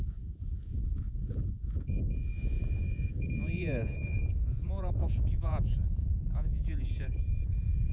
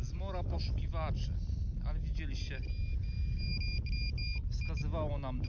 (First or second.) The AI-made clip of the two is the first